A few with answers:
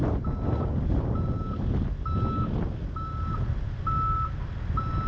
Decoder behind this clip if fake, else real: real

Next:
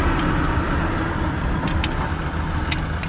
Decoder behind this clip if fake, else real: real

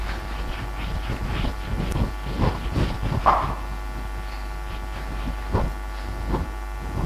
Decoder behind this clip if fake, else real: real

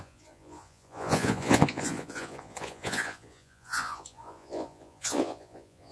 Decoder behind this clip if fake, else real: fake, vocoder, Vocos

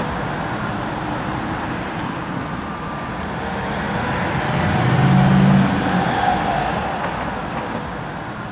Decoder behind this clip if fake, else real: real